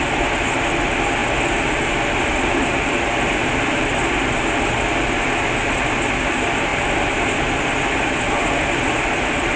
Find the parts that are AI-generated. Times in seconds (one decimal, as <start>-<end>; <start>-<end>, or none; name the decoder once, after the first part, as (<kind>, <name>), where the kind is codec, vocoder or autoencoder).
none